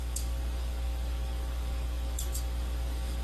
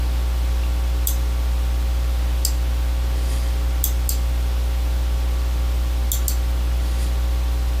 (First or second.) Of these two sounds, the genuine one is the second